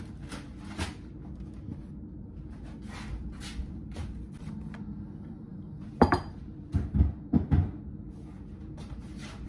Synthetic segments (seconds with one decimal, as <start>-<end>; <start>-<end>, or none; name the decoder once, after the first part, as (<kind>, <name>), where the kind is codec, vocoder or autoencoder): none